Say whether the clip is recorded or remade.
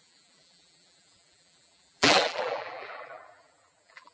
remade